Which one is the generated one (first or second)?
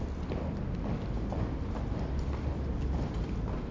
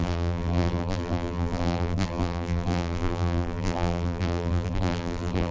second